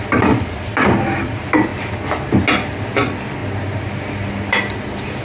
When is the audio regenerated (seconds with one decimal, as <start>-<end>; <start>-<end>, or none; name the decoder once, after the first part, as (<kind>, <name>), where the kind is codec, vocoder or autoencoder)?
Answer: 0.0-1.7 (vocoder, BigVGAN v2); 2.9-5.2